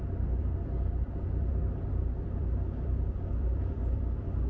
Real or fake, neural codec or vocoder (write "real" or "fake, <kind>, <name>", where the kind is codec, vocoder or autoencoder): fake, vocoder, BigVGAN v2